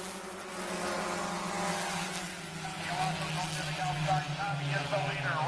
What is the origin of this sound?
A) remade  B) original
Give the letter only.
B